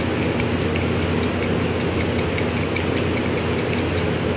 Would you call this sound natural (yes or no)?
yes